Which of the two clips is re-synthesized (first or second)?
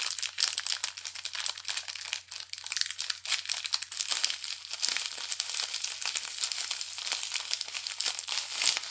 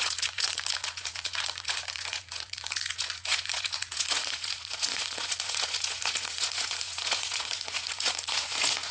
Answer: second